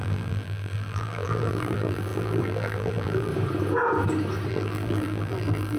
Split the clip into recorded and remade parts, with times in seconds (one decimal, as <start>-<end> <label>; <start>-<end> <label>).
0.0-3.3 remade; 3.3-4.5 recorded; 4.5-5.8 remade

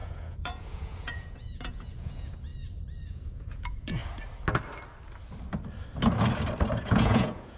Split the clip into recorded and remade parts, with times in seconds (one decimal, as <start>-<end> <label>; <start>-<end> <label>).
0.0-2.5 remade; 2.5-3.1 recorded; 3.1-4.0 remade; 4.0-6.8 recorded; 6.8-7.6 remade

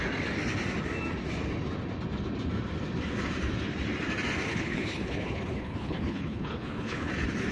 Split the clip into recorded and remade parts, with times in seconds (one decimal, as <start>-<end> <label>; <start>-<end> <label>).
0.0-4.5 recorded; 4.5-7.1 remade; 7.1-7.5 recorded

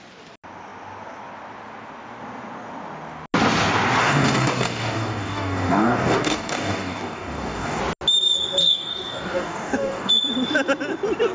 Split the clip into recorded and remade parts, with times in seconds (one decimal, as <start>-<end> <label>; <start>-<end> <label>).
0.0-4.0 recorded; 4.0-7.8 remade; 7.8-8.6 recorded; 8.6-10.1 remade; 10.1-11.3 recorded

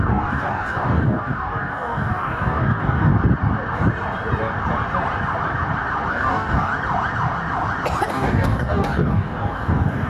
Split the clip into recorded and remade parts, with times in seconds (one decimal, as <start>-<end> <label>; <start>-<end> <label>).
0.0-3.1 remade; 3.1-6.1 recorded; 6.1-6.7 remade; 6.7-8.1 recorded; 8.1-10.1 remade

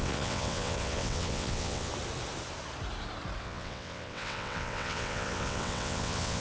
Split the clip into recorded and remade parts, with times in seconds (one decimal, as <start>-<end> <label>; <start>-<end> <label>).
0.0-1.9 remade; 1.9-3.4 recorded; 3.4-6.4 remade

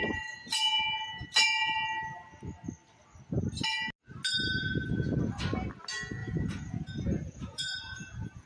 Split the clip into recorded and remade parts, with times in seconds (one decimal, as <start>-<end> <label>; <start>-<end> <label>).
0.0-6.2 recorded; 6.2-8.5 remade

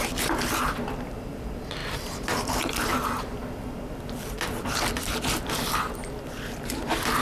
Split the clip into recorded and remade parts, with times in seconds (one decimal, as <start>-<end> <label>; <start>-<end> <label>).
0.0-1.8 recorded; 1.8-2.6 remade; 2.6-7.2 recorded